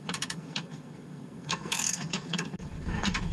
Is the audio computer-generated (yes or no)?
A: yes